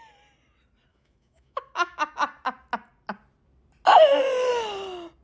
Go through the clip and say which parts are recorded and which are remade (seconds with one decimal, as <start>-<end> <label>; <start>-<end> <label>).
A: 0.0-0.9 recorded; 0.9-2.1 remade; 2.1-5.2 recorded